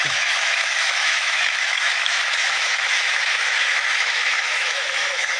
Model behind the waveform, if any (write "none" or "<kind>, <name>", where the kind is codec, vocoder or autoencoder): autoencoder, DAC-VAE